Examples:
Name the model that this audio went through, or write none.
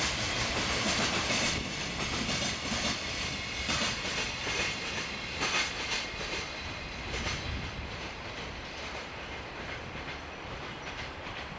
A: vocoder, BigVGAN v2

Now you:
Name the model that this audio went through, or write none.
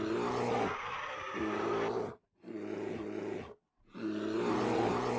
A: none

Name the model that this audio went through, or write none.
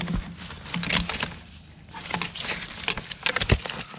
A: none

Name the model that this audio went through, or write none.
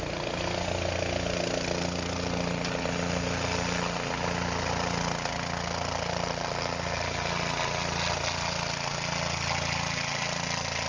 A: none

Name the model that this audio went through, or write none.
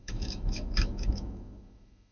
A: autoencoder, DAC-VAE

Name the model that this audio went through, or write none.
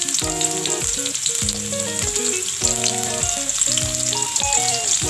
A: none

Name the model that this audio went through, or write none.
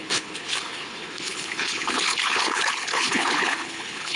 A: codec, HILCodec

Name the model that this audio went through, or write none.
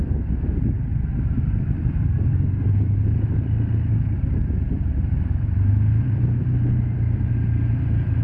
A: vocoder, BigVGAN v2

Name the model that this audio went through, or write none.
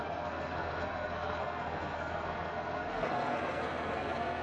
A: codec, SNAC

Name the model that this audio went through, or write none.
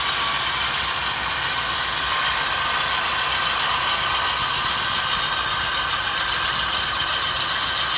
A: none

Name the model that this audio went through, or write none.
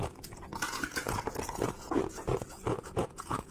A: vocoder, Vocos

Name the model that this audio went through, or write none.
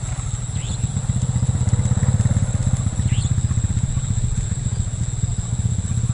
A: none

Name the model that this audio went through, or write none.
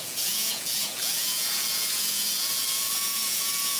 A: vocoder, Vocos